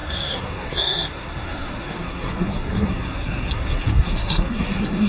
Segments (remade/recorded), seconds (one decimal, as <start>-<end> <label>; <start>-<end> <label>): 0.0-5.1 remade